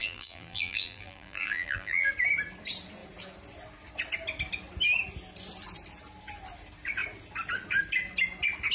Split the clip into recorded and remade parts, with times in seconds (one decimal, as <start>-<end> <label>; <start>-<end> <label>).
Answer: 0.0-2.1 remade; 2.1-8.7 recorded